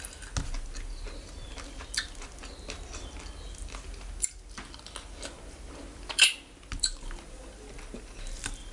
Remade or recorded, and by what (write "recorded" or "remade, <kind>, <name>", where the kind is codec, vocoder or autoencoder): recorded